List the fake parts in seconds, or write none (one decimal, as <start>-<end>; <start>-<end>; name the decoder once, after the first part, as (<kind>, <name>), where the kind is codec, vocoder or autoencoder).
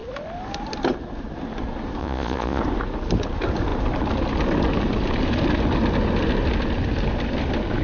2.0-2.6 (vocoder, Vocos)